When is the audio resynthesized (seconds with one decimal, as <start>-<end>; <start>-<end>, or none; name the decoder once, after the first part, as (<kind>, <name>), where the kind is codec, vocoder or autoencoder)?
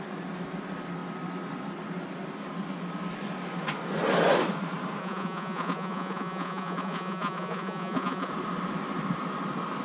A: 5.0-8.3 (vocoder, Vocos)